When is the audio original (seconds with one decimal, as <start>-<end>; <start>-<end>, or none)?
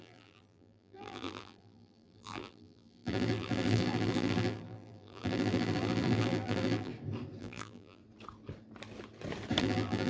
6.9-7.4; 8.0-9.6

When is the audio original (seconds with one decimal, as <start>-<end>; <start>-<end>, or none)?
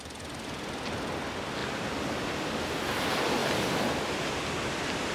0.0-1.6; 2.3-3.4; 4.5-5.1